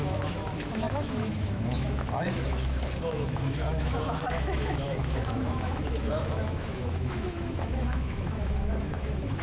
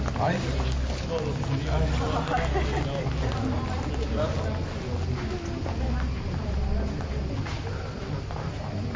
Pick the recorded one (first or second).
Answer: second